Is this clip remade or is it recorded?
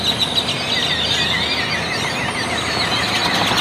recorded